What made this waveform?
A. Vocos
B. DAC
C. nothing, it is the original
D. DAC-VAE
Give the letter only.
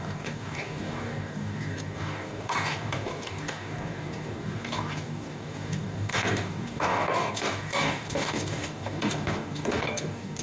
B